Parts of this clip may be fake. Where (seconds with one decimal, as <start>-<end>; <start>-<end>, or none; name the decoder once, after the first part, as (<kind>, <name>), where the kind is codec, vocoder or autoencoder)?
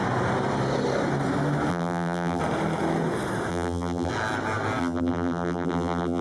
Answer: 1.7-2.4 (vocoder, BigVGAN v2); 3.5-4.1; 4.8-6.2